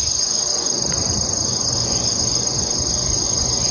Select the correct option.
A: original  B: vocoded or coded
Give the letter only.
B